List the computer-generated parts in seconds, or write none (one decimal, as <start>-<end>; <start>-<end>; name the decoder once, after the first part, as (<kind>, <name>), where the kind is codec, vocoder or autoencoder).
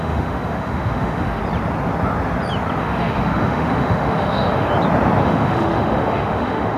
0.0-1.4 (autoencoder, DAC-VAE); 2.8-4.7; 5.2-6.8